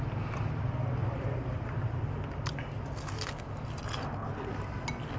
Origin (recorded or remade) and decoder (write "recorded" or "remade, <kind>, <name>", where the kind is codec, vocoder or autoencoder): recorded